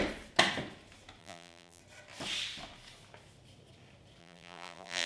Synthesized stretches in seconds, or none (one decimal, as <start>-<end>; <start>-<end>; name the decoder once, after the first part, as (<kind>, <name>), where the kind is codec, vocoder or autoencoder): 1.2-1.8 (vocoder, BigVGAN v2); 4.2-5.1